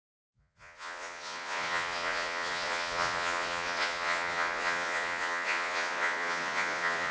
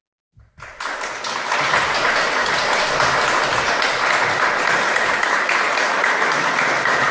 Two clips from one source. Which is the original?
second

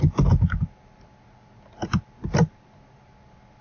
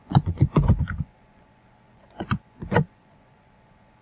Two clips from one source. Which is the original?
first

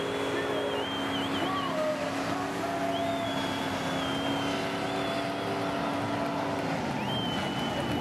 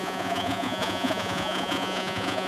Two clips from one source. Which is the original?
first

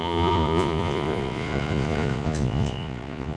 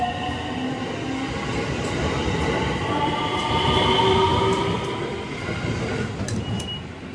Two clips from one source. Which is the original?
second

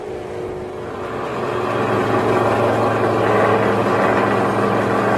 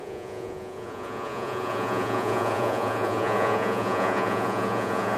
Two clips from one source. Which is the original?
first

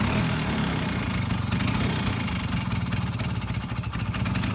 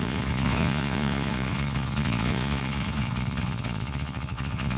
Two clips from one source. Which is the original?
first